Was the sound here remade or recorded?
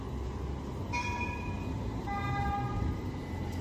recorded